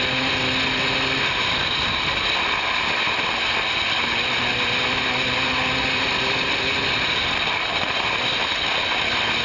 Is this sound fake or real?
real